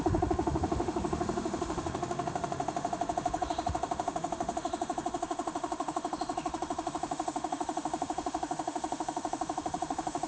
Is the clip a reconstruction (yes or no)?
yes